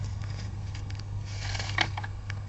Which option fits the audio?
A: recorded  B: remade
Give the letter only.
B